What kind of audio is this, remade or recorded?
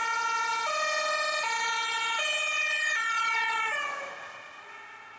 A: recorded